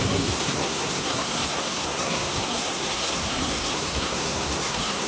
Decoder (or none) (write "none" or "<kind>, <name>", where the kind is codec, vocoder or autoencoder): codec, SNAC